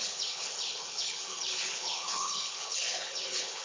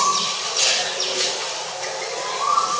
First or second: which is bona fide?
second